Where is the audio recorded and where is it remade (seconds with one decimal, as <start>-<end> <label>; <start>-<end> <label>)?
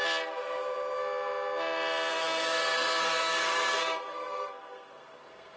0.0-2.1 recorded; 2.1-5.6 remade